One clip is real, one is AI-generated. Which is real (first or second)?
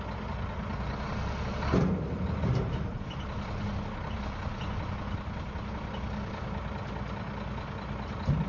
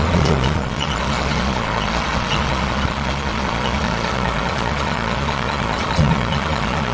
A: first